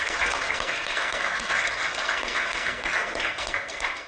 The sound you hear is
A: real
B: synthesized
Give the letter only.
B